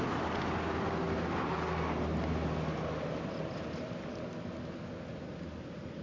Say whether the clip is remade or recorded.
recorded